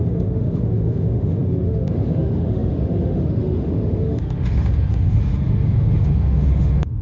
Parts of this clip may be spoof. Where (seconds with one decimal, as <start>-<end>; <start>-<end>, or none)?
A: 0.0-7.0